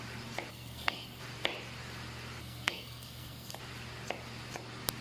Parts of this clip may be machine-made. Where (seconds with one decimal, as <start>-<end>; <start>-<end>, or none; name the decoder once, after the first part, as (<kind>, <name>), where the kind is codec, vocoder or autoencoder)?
0.5-1.2 (codec, SNAC); 2.4-3.6